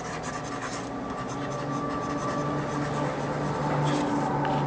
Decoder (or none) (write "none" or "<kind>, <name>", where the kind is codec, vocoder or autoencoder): none